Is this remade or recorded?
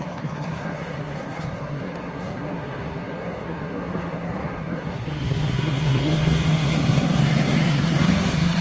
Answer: remade